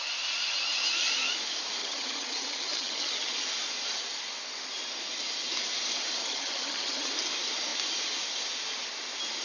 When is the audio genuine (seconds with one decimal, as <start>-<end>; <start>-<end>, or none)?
0.0-1.8; 3.3-6.2; 7.1-9.4